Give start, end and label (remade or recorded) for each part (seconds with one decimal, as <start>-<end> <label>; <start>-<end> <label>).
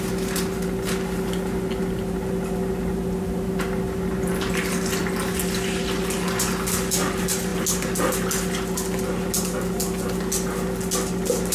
0.0-11.5 recorded